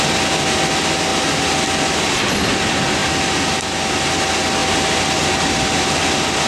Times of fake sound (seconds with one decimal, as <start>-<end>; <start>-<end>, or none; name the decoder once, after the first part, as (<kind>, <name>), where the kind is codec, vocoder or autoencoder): none